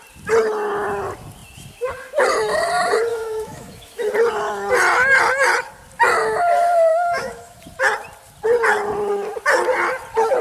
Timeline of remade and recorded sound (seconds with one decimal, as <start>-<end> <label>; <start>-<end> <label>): 0.0-3.1 recorded; 3.1-4.1 remade; 4.1-6.9 recorded; 6.9-7.6 remade; 7.6-10.4 recorded

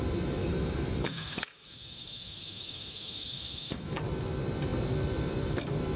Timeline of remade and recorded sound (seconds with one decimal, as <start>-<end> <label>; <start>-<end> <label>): 0.0-0.4 recorded; 0.4-4.0 remade; 4.0-6.0 recorded

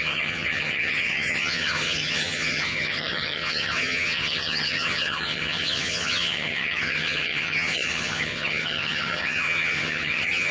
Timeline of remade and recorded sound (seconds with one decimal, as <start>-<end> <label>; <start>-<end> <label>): 0.0-10.5 remade

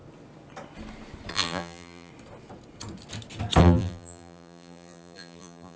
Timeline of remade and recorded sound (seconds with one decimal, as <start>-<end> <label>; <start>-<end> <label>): 0.0-1.3 recorded; 1.3-2.1 remade; 2.1-3.6 recorded; 3.6-5.8 remade

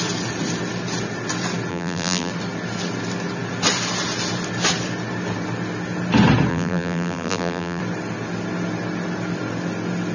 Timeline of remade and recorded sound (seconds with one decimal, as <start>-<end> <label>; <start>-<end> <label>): 0.0-1.7 recorded; 1.7-2.3 remade; 2.3-6.5 recorded; 6.5-7.8 remade; 7.8-10.1 recorded